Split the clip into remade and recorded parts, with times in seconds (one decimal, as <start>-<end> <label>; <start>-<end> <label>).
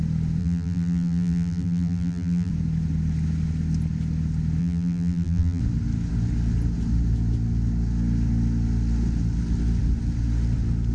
0.0-0.4 recorded; 0.4-2.5 remade; 2.5-4.6 recorded; 4.6-5.6 remade; 5.6-10.9 recorded